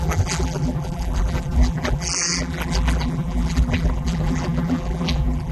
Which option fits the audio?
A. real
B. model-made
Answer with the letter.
B